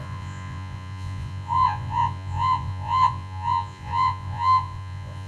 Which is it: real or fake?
fake